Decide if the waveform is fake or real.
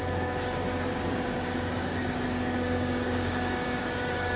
fake